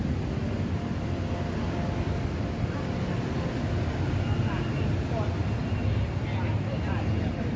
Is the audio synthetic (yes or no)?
no